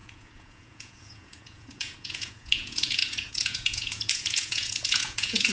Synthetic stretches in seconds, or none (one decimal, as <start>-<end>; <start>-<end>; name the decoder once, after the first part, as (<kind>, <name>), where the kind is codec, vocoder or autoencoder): 0.0-5.5 (vocoder, Vocos)